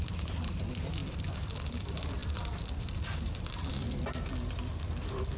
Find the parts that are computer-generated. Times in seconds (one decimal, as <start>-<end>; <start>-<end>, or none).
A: 1.0-1.5; 2.2-3.7

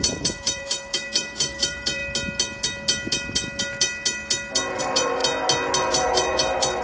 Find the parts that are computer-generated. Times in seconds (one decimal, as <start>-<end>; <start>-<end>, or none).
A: 0.0-2.0; 4.8-5.2; 5.9-6.8

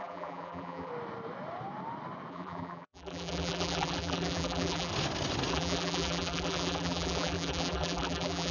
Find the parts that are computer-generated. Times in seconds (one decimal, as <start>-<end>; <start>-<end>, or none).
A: 0.0-0.9; 2.3-4.9; 5.5-8.5

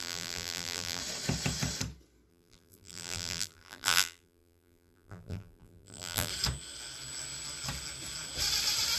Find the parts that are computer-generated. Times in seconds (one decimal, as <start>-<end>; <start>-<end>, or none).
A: 0.0-1.0; 2.3-6.3

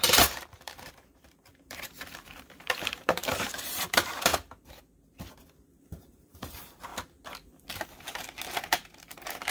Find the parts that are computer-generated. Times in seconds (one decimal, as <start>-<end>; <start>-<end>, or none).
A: 0.0-4.3; 5.8-6.9; 8.6-9.5